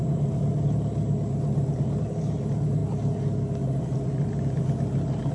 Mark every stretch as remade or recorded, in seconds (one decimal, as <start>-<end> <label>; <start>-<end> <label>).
0.0-5.3 recorded

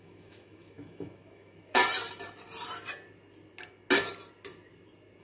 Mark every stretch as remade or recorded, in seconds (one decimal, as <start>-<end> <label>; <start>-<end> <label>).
0.0-1.8 remade; 1.8-5.2 recorded

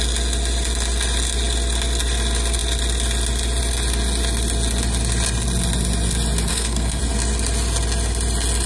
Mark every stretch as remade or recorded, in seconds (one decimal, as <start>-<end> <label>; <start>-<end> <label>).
0.0-6.5 recorded; 6.5-7.0 remade; 7.0-8.7 recorded

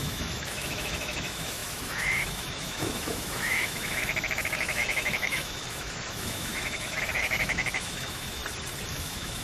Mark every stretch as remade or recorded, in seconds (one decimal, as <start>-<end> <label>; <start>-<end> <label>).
0.0-8.4 remade; 8.4-8.9 recorded; 8.9-9.4 remade

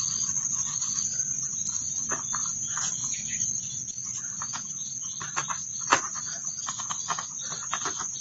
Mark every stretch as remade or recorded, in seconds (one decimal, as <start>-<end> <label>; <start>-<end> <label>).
0.0-8.2 recorded

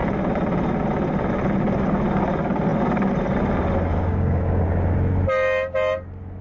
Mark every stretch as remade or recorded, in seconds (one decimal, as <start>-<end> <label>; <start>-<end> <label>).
0.0-3.9 recorded; 3.9-4.6 remade; 4.6-6.4 recorded

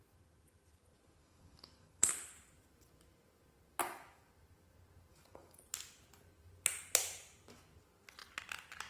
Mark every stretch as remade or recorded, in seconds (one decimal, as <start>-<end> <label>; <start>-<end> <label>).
0.0-1.2 recorded; 1.2-2.1 remade; 2.1-3.8 recorded; 3.8-4.3 remade; 4.3-5.1 recorded; 5.1-5.6 remade; 5.6-8.9 recorded